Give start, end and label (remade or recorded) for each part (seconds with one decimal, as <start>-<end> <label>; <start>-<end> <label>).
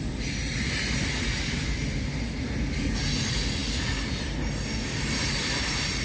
0.0-6.0 recorded